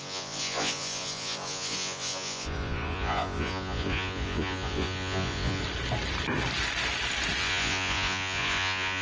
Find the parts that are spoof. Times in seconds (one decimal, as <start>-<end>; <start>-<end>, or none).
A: 0.0-5.6; 7.4-9.0